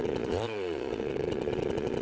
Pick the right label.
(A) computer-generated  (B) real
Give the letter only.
A